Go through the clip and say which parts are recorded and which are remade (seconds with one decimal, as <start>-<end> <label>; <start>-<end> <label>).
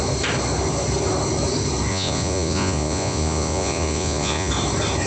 0.0-1.9 recorded; 1.9-4.5 remade; 4.5-5.1 recorded